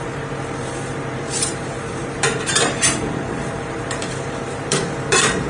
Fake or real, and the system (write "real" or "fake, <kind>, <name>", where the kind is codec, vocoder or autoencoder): fake, vocoder, BigVGAN v2